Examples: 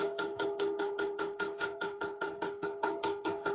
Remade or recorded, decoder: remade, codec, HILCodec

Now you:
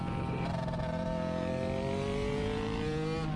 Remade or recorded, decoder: recorded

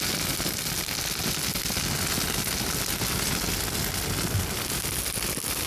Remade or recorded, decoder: recorded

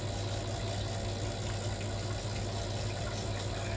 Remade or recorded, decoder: recorded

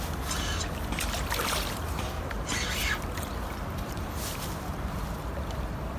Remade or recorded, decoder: recorded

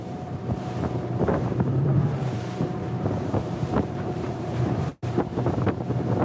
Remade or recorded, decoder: remade, vocoder, BigVGAN v2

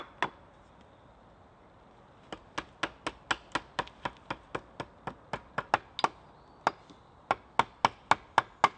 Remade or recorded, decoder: recorded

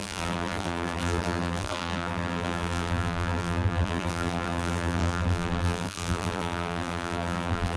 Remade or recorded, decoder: remade, vocoder, BigVGAN v2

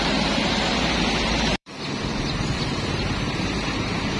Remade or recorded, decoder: remade, vocoder, BigVGAN v2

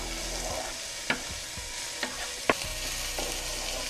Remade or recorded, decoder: recorded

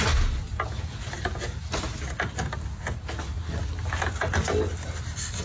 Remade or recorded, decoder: recorded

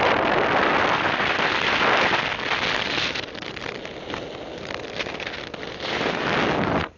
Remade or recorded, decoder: recorded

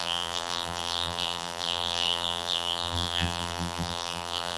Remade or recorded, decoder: remade, vocoder, BigVGAN v2